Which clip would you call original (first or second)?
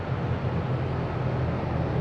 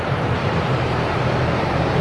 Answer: first